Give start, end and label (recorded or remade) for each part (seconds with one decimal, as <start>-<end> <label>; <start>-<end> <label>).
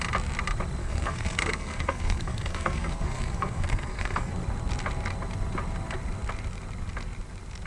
0.0-0.8 recorded; 0.8-4.3 remade; 4.3-7.7 recorded